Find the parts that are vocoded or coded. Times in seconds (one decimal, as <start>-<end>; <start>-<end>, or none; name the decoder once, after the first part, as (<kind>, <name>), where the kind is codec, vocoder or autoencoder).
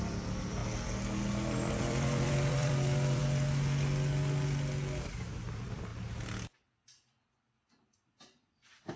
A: 0.0-0.6 (vocoder, BigVGAN v2); 1.7-3.2; 5.3-5.9; 8.2-9.0